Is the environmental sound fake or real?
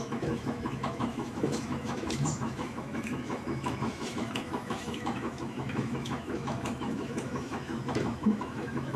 fake